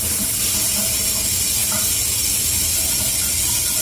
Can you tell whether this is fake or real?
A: real